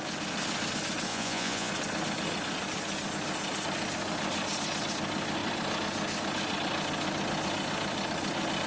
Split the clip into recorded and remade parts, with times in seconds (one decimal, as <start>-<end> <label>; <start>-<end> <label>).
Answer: 0.0-1.1 recorded; 1.1-1.7 remade; 1.7-8.7 recorded